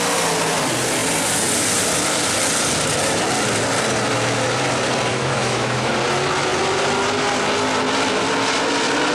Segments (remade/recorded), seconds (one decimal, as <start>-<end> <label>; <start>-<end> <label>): 0.0-5.1 recorded; 5.1-5.9 remade; 5.9-9.1 recorded